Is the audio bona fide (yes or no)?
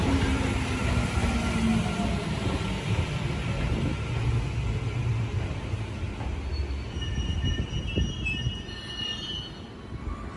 yes